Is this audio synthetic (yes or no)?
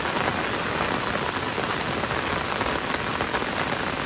no